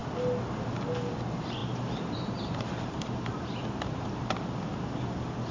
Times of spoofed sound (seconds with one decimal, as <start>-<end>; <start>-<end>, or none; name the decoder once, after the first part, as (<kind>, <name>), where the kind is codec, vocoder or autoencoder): 1.6-4.6 (vocoder, BigVGAN v2)